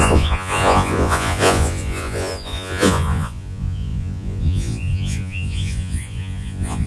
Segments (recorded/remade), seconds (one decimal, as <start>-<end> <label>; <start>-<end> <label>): 0.0-6.9 remade